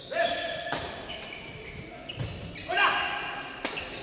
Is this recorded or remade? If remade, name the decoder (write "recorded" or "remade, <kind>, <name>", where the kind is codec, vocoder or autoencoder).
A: recorded